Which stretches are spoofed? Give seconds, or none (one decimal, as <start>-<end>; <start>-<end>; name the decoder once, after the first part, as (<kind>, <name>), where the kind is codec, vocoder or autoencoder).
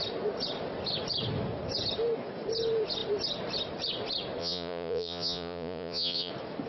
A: 4.4-6.3 (vocoder, Vocos)